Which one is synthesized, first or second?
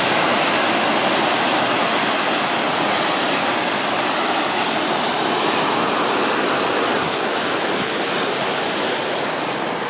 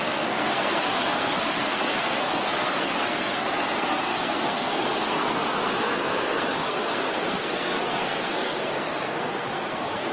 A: second